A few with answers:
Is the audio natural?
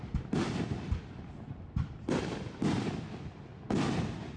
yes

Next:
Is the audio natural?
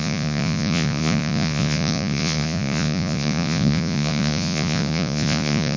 no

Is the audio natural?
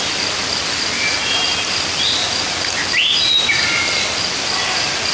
yes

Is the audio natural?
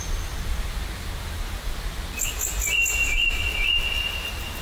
yes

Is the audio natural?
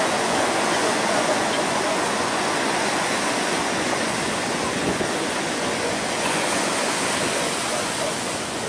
no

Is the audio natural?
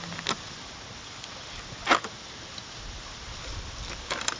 yes